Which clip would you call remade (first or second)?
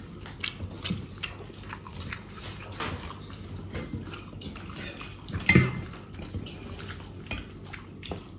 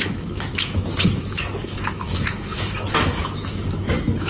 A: second